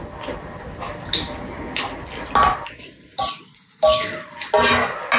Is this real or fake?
real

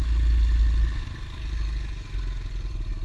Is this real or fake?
real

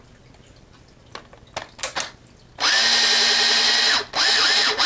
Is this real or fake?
real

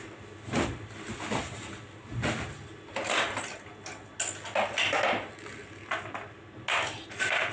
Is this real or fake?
real